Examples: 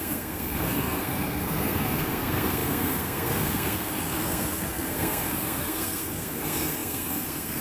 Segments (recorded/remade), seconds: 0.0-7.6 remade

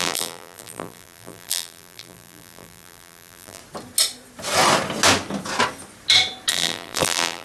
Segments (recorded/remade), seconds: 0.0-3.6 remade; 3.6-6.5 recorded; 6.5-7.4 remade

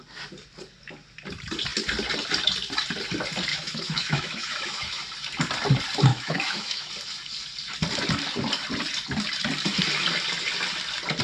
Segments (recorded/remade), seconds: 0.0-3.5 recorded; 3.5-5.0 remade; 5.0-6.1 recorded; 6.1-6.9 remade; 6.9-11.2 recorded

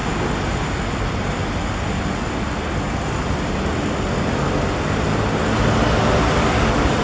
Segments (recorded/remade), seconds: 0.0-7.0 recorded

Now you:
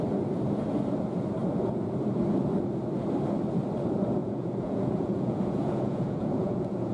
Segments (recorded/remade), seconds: 0.0-4.2 recorded; 4.2-6.9 remade